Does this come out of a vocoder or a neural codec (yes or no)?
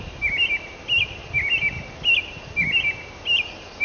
no